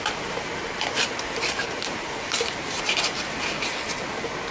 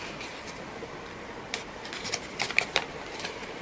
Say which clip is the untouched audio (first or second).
first